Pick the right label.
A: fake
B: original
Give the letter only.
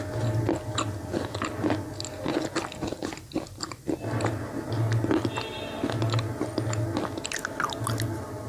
B